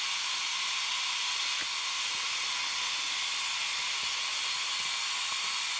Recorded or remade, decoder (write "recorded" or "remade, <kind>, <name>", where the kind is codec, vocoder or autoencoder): recorded